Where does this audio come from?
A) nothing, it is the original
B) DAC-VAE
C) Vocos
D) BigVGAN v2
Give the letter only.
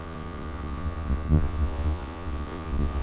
C